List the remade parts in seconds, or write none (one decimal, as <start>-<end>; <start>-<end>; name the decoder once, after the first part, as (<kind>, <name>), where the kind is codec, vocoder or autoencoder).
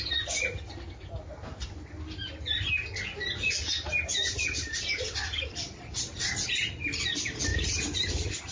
none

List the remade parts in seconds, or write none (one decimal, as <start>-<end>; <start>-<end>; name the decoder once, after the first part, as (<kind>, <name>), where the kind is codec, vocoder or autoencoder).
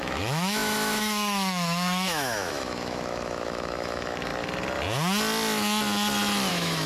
0.0-4.3 (autoencoder, DAC-VAE); 6.5-6.9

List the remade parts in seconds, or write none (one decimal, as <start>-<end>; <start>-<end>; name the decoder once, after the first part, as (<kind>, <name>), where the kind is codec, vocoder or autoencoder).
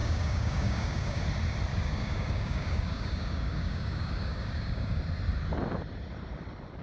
0.0-1.2 (codec, DAC); 1.7-5.0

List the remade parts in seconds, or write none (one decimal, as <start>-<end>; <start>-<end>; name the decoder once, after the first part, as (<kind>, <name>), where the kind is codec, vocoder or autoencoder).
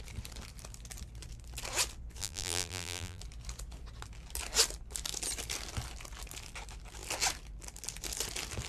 2.2-3.2 (vocoder, BigVGAN v2)